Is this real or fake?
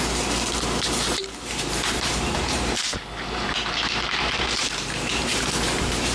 fake